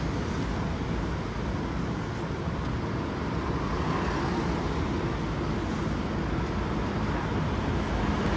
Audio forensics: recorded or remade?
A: recorded